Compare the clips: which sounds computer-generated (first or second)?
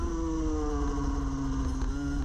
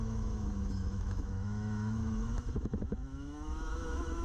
second